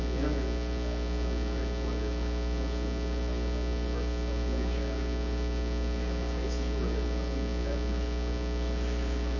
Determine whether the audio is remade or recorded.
recorded